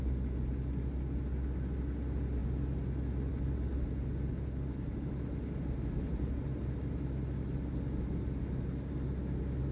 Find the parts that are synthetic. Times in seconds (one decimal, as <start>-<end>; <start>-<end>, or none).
none